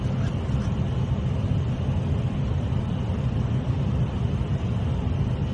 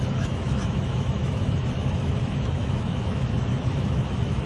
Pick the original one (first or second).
first